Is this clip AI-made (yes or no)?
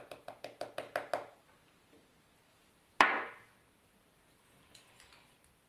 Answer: no